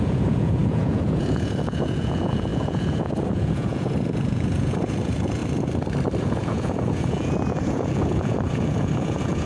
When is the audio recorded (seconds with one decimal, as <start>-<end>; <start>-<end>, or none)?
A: 5.4-6.2